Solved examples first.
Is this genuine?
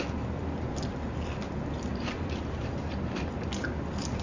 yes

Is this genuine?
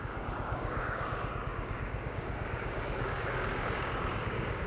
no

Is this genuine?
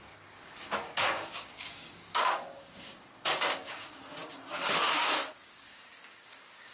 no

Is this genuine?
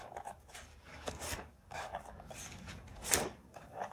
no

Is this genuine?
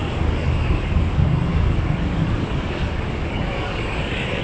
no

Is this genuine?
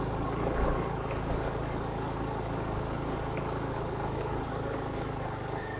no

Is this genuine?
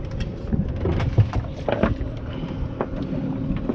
yes